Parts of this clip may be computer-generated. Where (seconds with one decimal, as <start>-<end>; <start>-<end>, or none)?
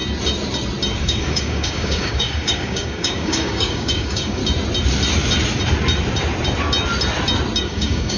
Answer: 1.0-4.4; 7.6-8.2